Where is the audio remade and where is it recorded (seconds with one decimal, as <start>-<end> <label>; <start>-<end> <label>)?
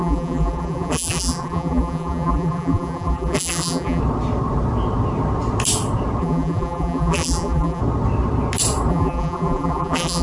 0.0-4.0 remade; 4.0-6.2 recorded; 6.2-7.8 remade; 7.8-8.9 recorded; 8.9-10.2 remade